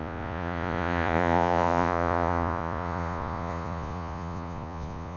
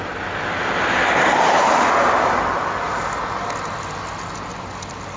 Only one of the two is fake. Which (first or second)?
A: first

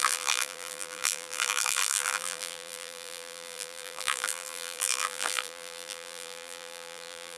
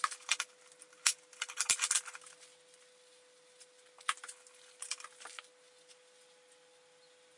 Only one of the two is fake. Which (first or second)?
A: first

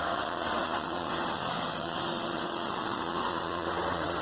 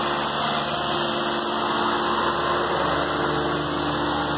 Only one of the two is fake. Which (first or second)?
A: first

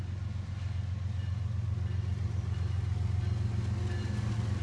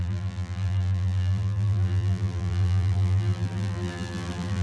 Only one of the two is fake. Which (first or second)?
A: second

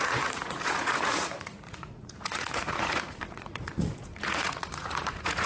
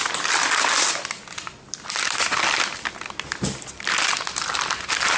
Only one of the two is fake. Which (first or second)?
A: first